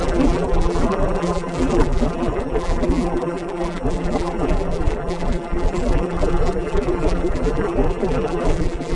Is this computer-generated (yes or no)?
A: yes